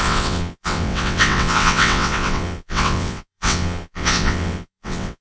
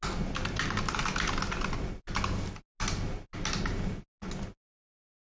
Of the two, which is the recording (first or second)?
second